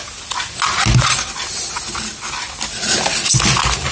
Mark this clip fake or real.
real